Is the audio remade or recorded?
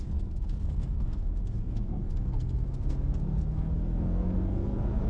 remade